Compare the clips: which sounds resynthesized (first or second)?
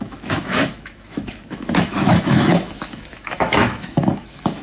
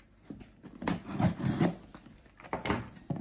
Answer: first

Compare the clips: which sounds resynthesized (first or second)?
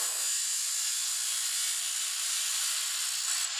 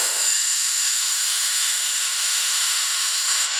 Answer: second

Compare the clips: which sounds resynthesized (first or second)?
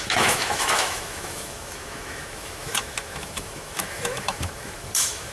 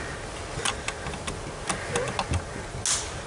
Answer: first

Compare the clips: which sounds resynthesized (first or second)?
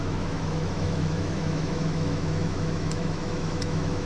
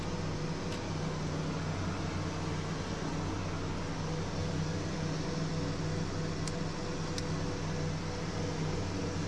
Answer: first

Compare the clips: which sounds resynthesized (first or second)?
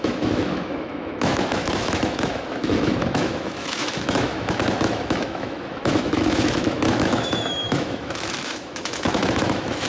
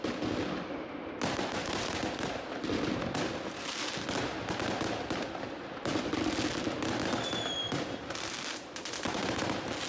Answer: first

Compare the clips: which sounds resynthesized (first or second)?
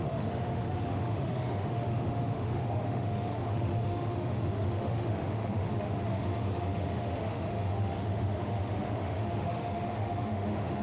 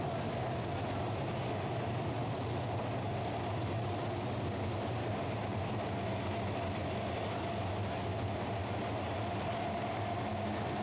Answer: first